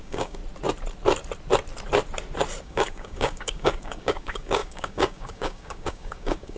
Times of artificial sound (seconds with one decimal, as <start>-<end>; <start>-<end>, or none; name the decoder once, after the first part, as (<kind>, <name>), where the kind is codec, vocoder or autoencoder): 0.0-0.4 (codec, DAC); 2.6-6.6